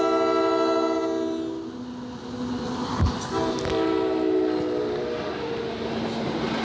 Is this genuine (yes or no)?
yes